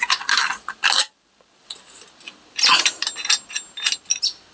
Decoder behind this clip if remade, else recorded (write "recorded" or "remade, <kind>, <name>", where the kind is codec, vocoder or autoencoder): recorded